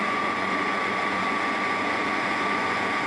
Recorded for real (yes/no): no